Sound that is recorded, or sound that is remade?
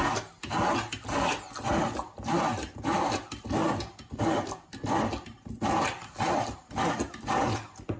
recorded